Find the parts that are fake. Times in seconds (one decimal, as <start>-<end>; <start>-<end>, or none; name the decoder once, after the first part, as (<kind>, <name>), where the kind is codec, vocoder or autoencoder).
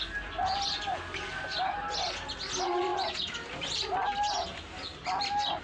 none